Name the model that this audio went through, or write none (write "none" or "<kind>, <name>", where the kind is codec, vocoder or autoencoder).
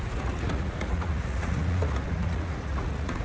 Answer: vocoder, Vocos